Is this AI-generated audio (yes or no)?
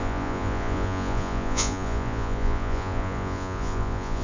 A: yes